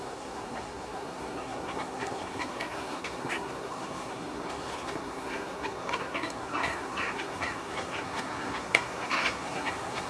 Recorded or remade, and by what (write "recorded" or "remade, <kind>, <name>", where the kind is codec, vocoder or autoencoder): remade, codec, SNAC